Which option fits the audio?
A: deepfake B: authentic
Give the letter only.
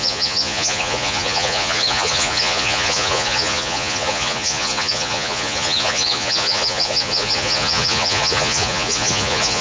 A